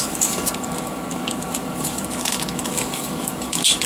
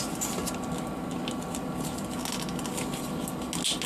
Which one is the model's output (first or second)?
first